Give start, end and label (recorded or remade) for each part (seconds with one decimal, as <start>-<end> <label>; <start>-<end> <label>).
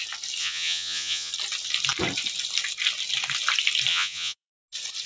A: 0.0-0.4 recorded; 0.4-1.3 remade; 1.3-3.9 recorded; 3.9-4.5 remade; 4.5-5.1 recorded